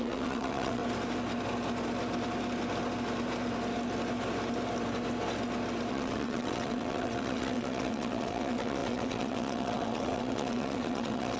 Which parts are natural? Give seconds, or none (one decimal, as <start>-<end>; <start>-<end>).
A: 0.8-5.9